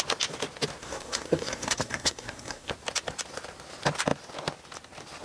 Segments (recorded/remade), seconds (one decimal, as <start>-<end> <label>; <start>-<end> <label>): 0.0-0.8 recorded; 0.8-2.7 remade; 2.7-5.2 recorded